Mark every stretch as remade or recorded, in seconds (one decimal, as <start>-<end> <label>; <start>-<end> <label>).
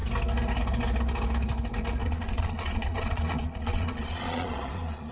0.0-2.0 recorded; 2.0-5.1 remade